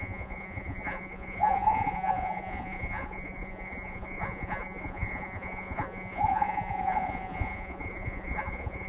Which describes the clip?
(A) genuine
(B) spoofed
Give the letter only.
B